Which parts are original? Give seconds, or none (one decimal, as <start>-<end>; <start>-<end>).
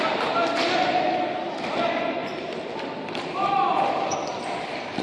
0.0-2.2; 3.8-5.0